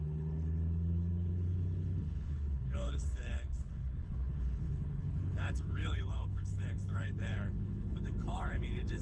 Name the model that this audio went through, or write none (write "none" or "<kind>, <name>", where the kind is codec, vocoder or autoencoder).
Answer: codec, HILCodec